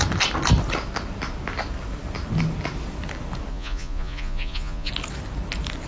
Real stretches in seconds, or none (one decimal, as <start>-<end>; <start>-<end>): 0.0-3.5; 4.9-5.9